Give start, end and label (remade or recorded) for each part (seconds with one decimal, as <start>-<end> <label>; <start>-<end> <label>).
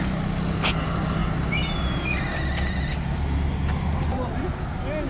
0.0-5.1 recorded